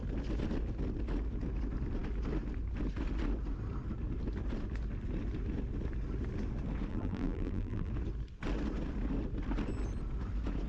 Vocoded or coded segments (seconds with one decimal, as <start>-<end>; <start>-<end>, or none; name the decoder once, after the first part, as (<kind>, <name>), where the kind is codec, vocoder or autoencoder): 6.9-7.9 (vocoder, BigVGAN v2)

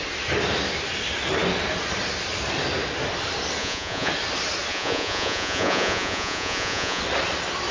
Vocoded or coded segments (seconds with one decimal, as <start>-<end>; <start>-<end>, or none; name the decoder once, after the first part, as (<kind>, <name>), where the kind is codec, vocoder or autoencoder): 3.6-4.1 (vocoder, Vocos); 4.7-7.0

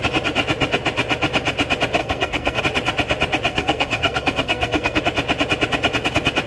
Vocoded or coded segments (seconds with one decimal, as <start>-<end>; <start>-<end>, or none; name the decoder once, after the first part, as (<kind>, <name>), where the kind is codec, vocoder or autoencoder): 2.0-2.6 (codec, SNAC); 3.5-5.0